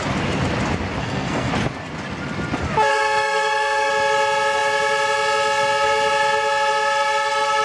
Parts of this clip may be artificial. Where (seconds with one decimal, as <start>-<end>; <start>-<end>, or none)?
1.0-1.5; 2.9-3.9